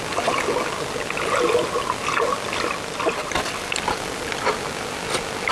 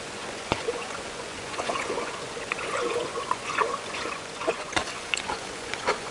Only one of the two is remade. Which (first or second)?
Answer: second